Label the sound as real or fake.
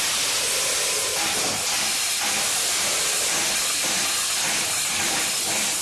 real